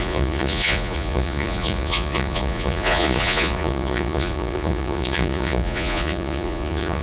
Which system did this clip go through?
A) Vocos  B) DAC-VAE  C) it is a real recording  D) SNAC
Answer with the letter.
A